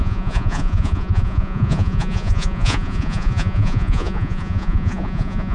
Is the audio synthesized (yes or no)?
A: yes